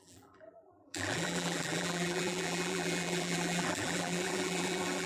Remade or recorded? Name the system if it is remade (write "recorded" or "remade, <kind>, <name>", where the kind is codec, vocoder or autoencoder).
remade, vocoder, BigVGAN v2